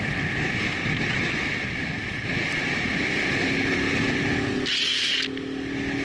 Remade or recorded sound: recorded